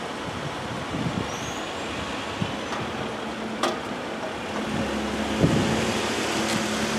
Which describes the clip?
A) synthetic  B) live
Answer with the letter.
B